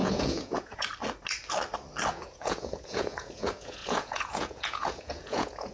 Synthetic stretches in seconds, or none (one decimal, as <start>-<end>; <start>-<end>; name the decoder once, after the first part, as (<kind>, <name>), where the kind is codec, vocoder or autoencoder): 0.0-0.9 (vocoder, Vocos); 2.1-5.7

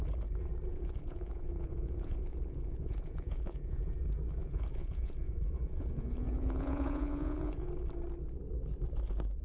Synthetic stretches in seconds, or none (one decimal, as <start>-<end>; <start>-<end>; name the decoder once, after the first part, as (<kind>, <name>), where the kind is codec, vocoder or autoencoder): 0.7-3.9 (vocoder, Vocos); 4.4-7.7

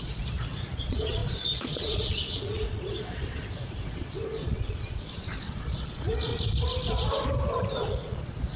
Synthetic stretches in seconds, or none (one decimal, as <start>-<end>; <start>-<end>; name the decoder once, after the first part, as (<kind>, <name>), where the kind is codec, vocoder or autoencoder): 0.0-6.3 (vocoder, Vocos); 7.6-8.6

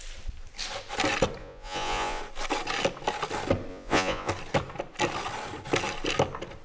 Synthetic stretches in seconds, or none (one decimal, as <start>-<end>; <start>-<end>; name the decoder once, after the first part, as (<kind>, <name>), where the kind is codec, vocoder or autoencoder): 1.4-2.2 (vocoder, Vocos); 3.7-4.3

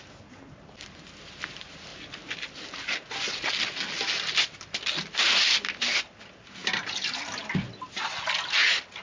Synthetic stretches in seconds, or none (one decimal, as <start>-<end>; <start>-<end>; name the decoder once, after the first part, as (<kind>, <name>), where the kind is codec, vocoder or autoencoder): none

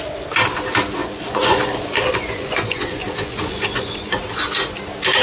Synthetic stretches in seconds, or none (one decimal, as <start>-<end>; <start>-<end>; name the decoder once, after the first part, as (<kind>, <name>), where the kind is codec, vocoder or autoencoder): 1.0-4.1 (vocoder, Vocos)